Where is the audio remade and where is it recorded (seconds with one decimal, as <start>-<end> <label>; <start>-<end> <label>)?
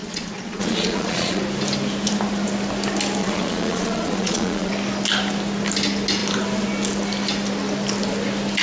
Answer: 0.0-1.4 remade; 1.4-3.2 recorded; 3.2-4.7 remade; 4.7-8.6 recorded